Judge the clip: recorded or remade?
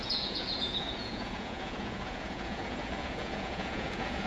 remade